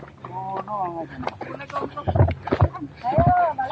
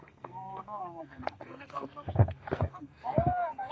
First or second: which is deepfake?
second